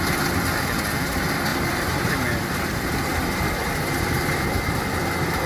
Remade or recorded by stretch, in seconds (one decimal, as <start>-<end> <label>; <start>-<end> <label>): 0.0-1.5 recorded; 1.5-4.8 remade; 4.8-5.5 recorded